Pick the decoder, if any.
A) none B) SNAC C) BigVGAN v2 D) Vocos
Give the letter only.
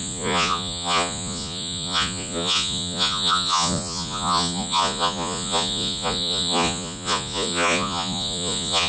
D